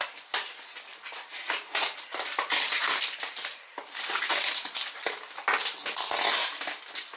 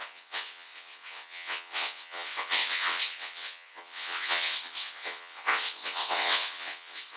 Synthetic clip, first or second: second